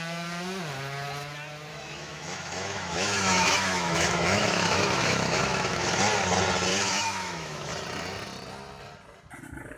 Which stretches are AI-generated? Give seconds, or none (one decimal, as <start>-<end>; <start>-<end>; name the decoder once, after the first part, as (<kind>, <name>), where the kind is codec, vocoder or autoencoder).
1.7-6.0 (autoencoder, DAC-VAE); 6.7-7.7